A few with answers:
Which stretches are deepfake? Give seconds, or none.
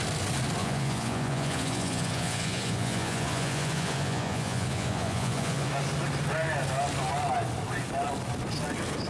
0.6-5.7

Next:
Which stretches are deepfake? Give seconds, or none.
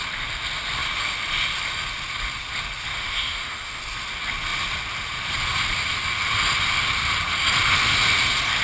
2.9-3.8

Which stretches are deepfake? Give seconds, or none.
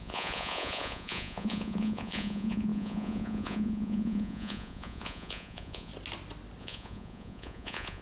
0.0-5.9; 6.6-8.0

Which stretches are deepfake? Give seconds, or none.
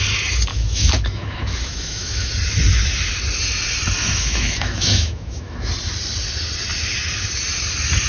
0.5-2.3; 4.0-5.7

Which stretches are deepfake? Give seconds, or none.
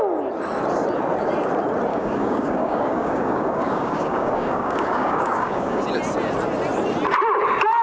1.9-5.8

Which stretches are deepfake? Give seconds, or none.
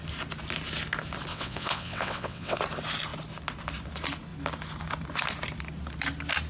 1.3-2.6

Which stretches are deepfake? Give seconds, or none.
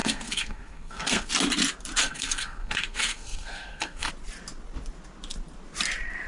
0.0-1.3; 2.0-4.1